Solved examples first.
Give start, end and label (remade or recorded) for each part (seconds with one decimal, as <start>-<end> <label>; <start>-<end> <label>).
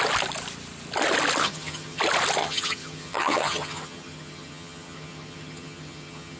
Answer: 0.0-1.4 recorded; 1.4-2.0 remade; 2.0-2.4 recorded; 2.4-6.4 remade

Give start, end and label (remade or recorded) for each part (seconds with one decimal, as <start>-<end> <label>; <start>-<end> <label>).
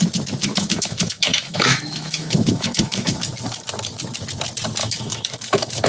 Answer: 0.0-0.4 recorded; 0.4-3.2 remade; 3.2-4.8 recorded; 4.8-5.9 remade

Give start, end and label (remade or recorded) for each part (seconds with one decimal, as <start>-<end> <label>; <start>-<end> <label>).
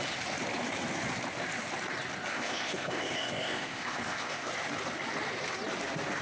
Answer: 0.0-2.3 recorded; 2.3-4.5 remade; 4.5-6.2 recorded